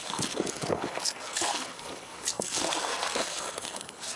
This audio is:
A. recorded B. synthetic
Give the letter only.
B